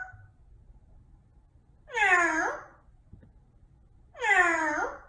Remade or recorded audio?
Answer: recorded